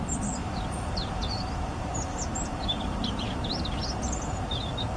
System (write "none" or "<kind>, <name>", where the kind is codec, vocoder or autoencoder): vocoder, BigVGAN v2